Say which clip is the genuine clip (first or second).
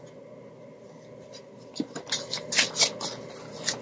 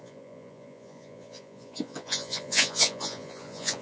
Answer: first